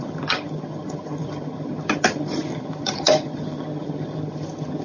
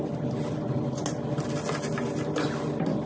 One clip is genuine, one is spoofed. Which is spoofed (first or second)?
first